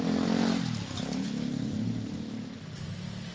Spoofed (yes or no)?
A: no